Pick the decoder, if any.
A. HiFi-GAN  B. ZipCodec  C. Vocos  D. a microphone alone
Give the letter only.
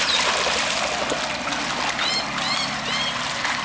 D